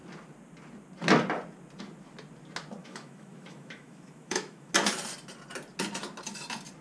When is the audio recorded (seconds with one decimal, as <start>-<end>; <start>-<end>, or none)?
0.0-2.8; 4.7-6.8